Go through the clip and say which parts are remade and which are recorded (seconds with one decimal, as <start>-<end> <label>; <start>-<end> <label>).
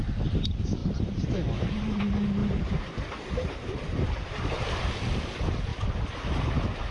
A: 0.0-0.8 recorded; 0.8-2.0 remade; 2.0-2.4 recorded; 2.4-5.0 remade; 5.0-6.9 recorded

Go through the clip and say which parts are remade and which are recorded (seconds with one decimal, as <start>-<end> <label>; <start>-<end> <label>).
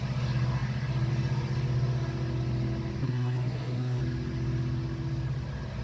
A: 0.0-3.0 recorded; 3.0-4.0 remade; 4.0-5.8 recorded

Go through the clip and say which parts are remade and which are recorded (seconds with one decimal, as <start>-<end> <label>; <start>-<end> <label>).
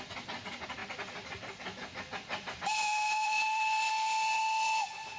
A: 0.0-0.8 recorded; 0.8-3.9 remade; 3.9-5.2 recorded